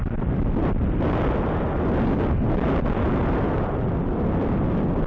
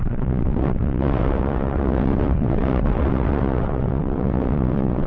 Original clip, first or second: first